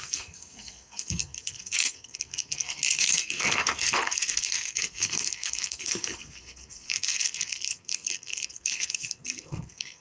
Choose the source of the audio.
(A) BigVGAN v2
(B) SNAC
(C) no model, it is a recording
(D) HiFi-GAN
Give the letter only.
B